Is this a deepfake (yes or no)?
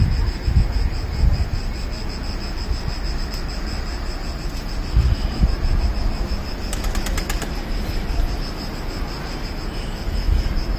no